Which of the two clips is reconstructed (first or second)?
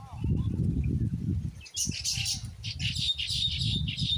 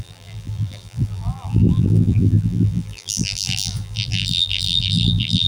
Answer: second